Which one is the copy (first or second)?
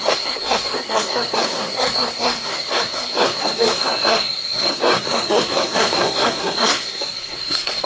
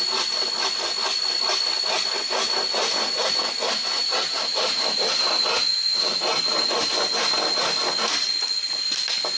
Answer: first